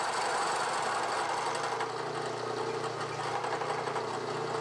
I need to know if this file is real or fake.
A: real